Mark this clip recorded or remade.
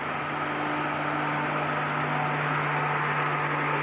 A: recorded